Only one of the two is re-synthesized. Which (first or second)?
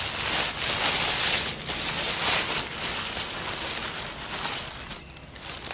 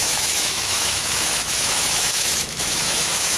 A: second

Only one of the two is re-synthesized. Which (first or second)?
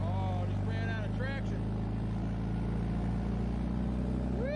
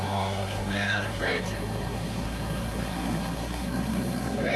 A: second